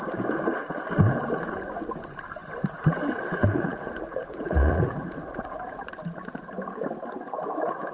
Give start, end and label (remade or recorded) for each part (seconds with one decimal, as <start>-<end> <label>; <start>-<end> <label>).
0.0-3.4 recorded; 3.4-5.9 remade; 5.9-7.9 recorded